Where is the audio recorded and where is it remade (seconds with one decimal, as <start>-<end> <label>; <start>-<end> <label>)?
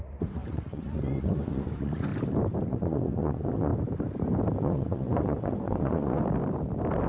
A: 0.0-2.1 remade; 2.1-2.7 recorded; 2.7-3.7 remade; 3.7-4.6 recorded; 4.6-6.2 remade; 6.2-7.1 recorded